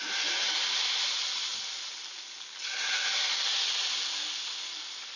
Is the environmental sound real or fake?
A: real